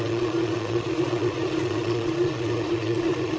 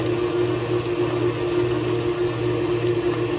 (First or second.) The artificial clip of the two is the first